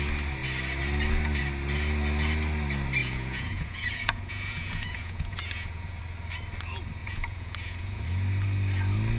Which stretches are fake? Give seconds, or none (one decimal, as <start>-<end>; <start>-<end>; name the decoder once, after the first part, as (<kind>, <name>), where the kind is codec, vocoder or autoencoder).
3.0-6.0 (vocoder, Vocos); 7.0-8.0